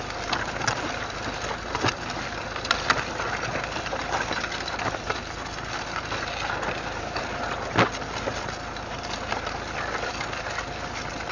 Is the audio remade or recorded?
recorded